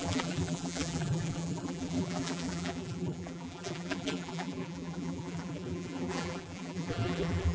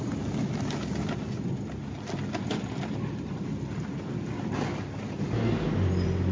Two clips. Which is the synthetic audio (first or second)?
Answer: first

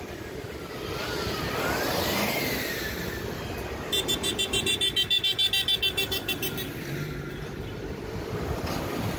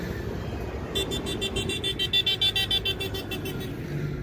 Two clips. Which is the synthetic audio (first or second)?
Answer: first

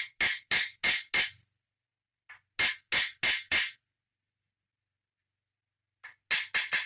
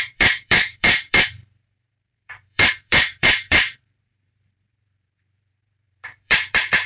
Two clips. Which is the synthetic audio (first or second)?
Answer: second